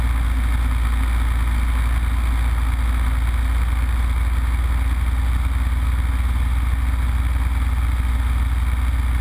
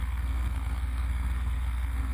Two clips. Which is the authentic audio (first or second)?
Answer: first